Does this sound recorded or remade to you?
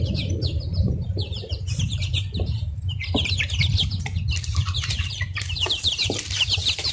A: remade